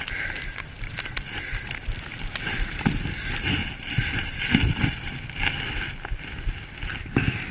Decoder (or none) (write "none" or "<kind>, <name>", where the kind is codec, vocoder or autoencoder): none